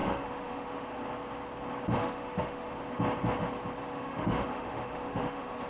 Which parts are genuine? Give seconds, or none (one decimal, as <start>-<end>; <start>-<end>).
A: 0.9-2.0; 2.7-3.9